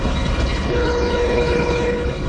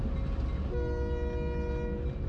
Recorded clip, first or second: second